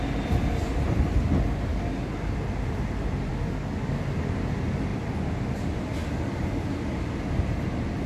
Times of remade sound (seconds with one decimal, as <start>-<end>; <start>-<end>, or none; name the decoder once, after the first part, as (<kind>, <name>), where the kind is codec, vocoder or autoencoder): 1.7-2.3 (codec, DAC); 3.3-4.0